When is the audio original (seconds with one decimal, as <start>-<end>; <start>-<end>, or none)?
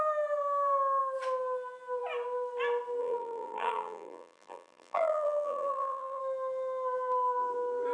0.0-3.0; 6.2-7.9